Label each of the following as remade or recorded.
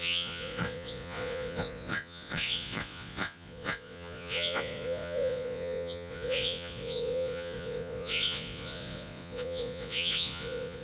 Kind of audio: remade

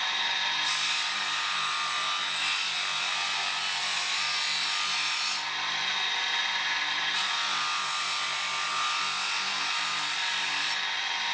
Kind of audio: recorded